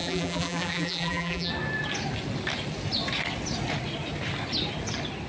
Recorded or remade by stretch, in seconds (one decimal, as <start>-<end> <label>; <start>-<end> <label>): 0.0-1.5 remade; 1.5-5.3 recorded